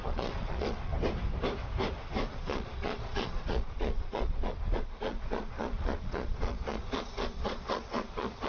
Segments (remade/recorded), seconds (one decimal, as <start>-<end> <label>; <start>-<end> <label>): 0.0-0.9 remade; 0.9-2.3 recorded; 2.3-8.5 remade